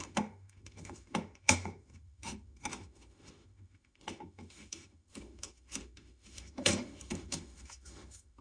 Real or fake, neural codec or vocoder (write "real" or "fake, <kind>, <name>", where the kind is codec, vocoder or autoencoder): fake, autoencoder, DAC-VAE